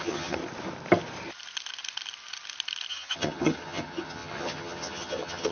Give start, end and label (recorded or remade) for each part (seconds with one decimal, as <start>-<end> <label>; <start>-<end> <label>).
0.0-0.4 remade; 0.4-2.9 recorded; 2.9-5.5 remade